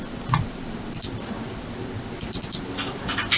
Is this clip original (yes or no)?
yes